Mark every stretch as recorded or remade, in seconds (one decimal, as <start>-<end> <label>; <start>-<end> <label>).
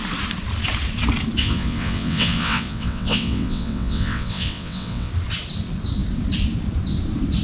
0.0-1.4 recorded; 1.4-5.1 remade; 5.1-7.4 recorded